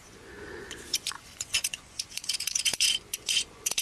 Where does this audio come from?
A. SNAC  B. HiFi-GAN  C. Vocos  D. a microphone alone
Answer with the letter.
C